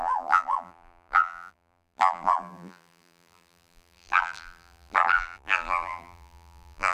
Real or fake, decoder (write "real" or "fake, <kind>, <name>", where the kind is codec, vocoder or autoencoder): fake, vocoder, BigVGAN v2